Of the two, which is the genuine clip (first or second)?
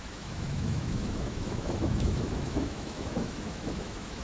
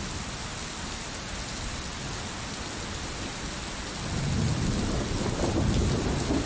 second